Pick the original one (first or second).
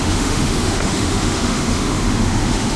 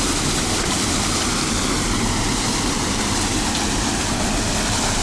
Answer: second